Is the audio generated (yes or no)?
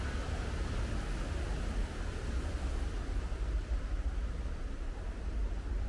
no